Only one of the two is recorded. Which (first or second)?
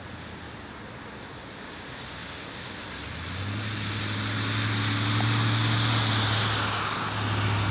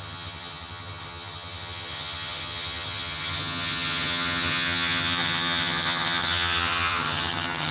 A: first